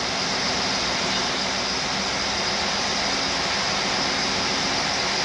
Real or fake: real